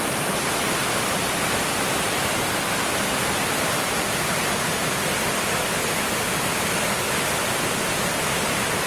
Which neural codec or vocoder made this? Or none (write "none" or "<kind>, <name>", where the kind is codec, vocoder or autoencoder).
none